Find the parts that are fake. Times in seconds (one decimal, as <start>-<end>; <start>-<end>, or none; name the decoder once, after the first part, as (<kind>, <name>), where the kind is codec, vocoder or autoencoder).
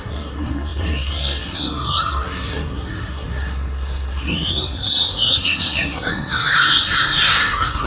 0.0-7.9 (codec, SNAC)